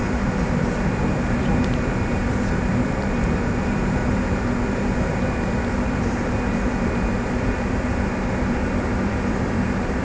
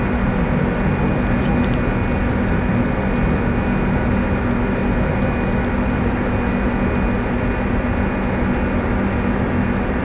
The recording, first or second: second